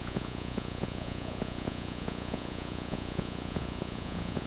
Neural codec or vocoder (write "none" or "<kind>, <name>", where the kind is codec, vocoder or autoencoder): vocoder, Vocos